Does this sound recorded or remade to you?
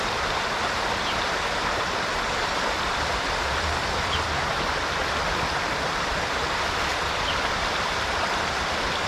remade